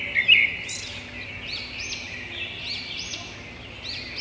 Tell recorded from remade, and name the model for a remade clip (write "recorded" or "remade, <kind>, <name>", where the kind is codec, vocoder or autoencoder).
recorded